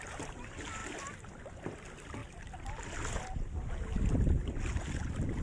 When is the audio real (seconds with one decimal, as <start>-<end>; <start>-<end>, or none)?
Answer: 0.0-5.4